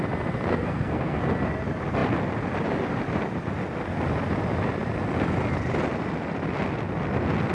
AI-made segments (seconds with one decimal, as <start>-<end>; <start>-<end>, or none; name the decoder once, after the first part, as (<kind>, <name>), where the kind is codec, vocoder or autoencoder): 0.5-1.2 (codec, SNAC)